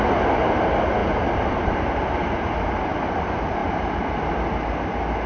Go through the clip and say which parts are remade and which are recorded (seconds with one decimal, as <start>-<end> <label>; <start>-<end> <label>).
0.0-5.3 recorded